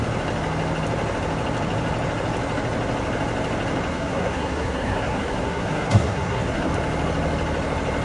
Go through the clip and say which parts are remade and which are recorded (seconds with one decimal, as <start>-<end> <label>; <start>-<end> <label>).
0.0-3.9 recorded; 3.9-6.7 remade; 6.7-8.0 recorded